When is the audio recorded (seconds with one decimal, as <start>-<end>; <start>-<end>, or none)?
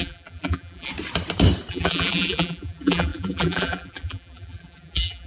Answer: 0.9-1.7